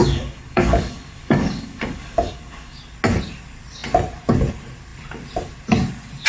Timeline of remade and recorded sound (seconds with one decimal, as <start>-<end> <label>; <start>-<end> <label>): 0.0-2.8 remade; 2.8-6.3 recorded